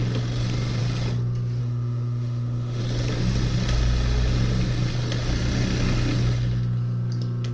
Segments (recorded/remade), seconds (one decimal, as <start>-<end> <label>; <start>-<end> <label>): 0.0-1.6 recorded; 1.6-2.8 remade; 2.8-7.5 recorded